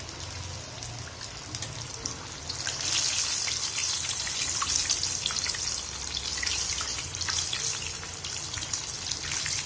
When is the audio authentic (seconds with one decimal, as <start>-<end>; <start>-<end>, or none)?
0.0-3.8; 4.3-9.7